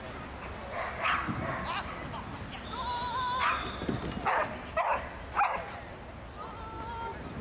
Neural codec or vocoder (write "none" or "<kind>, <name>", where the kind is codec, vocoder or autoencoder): none